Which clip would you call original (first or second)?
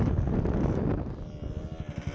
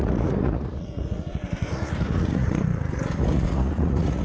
first